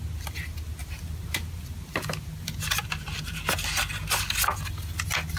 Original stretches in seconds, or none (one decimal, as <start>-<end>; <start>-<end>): 0.0-0.8; 3.4-5.4